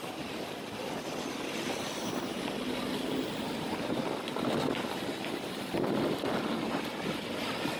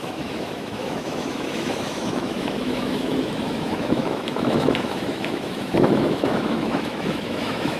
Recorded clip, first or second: first